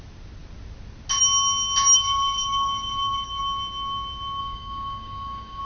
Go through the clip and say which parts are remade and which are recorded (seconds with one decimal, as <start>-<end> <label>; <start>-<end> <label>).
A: 0.0-1.9 recorded; 1.9-3.4 remade; 3.4-4.4 recorded; 4.4-5.6 remade